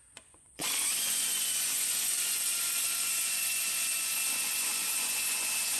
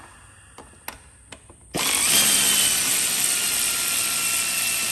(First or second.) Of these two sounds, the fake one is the first